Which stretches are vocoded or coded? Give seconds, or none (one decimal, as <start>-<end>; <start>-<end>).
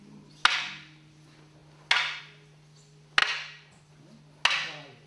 none